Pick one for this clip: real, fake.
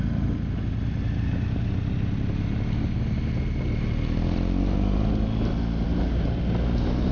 real